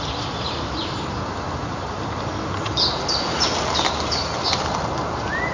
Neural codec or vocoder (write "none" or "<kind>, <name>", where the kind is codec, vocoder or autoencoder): none